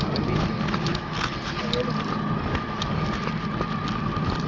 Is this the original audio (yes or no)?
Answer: yes